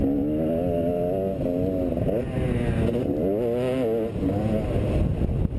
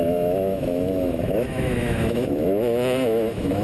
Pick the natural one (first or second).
first